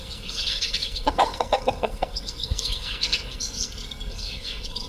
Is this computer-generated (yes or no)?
yes